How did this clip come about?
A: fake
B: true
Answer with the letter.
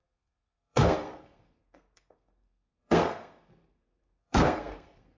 A